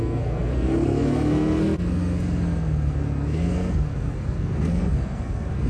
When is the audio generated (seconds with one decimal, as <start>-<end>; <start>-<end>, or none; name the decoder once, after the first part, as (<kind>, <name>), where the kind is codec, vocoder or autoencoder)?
0.0-5.7 (codec, SNAC)